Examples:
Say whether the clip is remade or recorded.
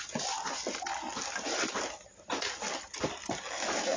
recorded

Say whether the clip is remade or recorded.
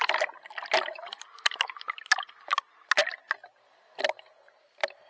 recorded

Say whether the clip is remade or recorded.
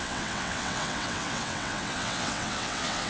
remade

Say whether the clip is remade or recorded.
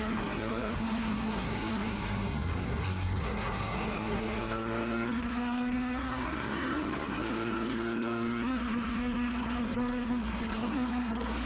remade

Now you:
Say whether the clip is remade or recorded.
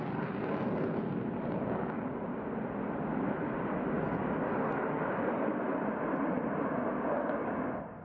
recorded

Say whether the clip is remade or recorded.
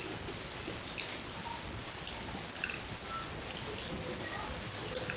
recorded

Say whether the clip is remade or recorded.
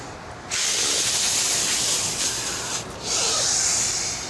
recorded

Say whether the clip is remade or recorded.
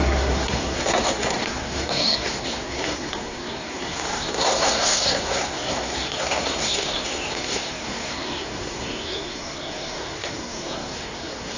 remade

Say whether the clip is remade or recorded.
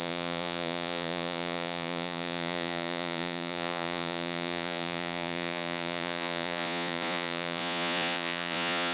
remade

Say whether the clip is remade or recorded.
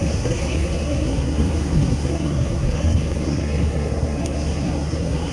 remade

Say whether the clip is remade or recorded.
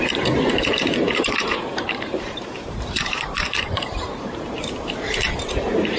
remade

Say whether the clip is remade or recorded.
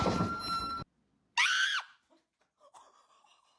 recorded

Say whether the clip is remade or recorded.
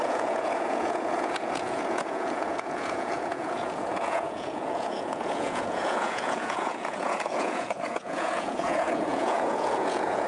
remade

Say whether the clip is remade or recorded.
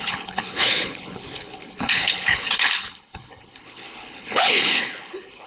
remade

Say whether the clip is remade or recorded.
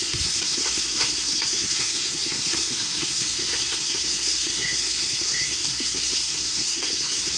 remade